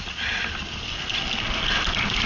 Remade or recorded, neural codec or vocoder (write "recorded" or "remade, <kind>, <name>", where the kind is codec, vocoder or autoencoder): recorded